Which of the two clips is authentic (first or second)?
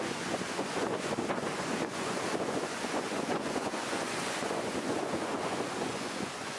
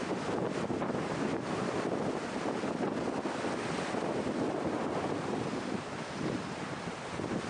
second